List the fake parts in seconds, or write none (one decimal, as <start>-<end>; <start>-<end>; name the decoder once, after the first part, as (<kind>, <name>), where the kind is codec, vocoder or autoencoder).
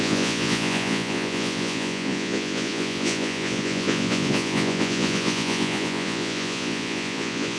0.0-7.6 (vocoder, Vocos)